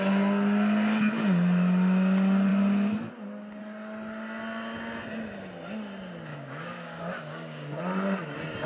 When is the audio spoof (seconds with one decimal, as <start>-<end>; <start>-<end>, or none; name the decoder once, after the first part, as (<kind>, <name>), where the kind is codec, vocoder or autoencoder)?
6.3-7.8 (codec, DAC)